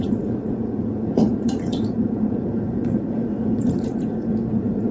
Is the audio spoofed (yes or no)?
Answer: yes